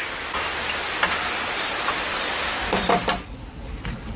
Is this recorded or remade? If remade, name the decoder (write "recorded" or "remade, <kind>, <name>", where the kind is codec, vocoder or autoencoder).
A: recorded